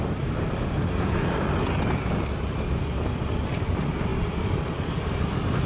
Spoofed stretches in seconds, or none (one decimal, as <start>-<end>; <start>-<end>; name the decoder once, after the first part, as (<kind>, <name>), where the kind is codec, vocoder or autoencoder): 4.1-4.6 (vocoder, BigVGAN v2)